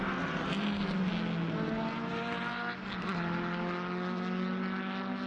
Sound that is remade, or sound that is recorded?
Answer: recorded